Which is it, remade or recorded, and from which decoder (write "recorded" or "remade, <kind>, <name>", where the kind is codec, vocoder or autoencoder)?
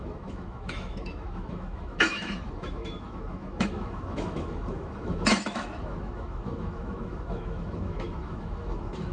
remade, autoencoder, DAC-VAE